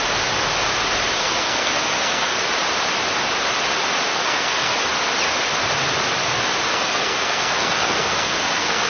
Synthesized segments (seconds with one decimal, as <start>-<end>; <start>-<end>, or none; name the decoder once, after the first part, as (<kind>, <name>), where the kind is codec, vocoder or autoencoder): 1.2-2.4 (codec, SNAC); 4.1-4.7; 6.7-8.9